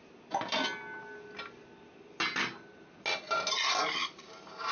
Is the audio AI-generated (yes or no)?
no